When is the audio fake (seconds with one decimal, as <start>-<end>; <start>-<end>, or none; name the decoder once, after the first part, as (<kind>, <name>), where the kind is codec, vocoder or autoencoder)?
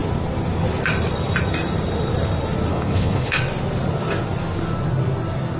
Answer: 2.7-3.4 (codec, HILCodec)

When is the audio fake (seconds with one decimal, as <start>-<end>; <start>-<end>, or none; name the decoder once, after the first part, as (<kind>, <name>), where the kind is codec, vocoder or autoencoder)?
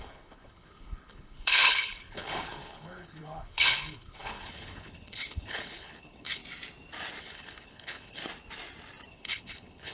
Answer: 0.0-6.4 (codec, HILCodec); 7.2-8.2; 9.1-9.9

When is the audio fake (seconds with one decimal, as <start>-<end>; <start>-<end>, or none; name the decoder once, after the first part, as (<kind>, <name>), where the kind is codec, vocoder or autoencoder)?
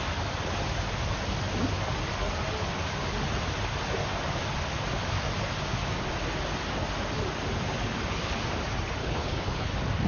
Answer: 9.0-9.7 (codec, HILCodec)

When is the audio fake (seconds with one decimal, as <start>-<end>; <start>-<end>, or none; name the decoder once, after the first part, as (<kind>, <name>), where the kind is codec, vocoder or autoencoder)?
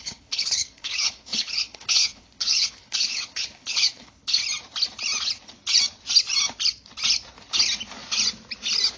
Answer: 0.0-4.4 (codec, HILCodec)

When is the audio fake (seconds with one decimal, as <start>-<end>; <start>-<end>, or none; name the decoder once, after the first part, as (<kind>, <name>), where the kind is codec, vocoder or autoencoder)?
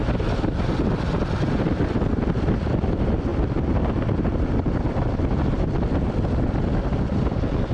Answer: none